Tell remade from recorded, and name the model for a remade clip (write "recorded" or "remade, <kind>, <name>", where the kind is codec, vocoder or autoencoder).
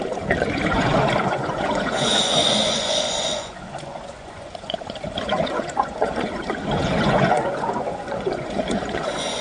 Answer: remade, vocoder, Vocos